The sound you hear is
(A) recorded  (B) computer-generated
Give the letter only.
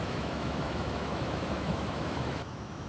B